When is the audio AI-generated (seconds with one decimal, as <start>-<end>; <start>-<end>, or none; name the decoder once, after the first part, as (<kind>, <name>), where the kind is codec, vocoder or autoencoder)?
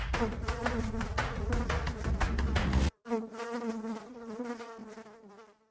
0.0-4.8 (vocoder, Vocos)